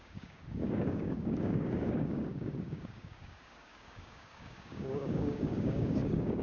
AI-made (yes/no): yes